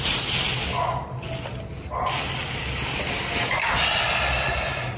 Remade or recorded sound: recorded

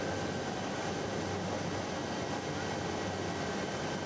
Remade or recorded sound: recorded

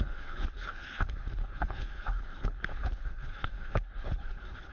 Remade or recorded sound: remade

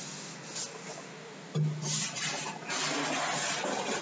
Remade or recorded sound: recorded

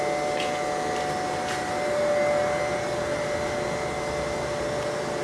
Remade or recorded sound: recorded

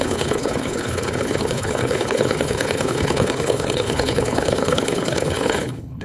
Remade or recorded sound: remade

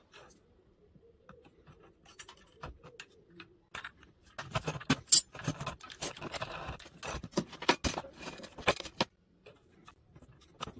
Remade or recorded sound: recorded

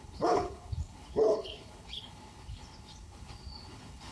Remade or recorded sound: remade